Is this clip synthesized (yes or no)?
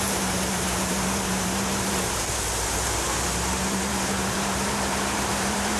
yes